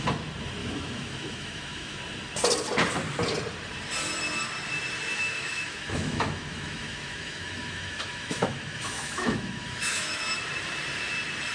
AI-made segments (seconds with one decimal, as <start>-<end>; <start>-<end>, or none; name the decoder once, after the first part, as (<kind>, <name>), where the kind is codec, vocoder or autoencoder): 0.6-2.0 (autoencoder, DAC-VAE); 5.1-10.2